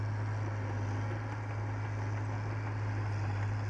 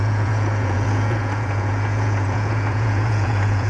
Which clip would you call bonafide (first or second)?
first